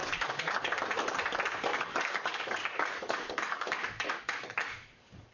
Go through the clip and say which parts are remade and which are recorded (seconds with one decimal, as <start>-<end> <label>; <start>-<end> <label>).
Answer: 0.0-0.6 remade; 0.6-1.7 recorded; 1.7-5.3 remade